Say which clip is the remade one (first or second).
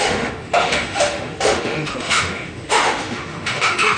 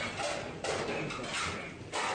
first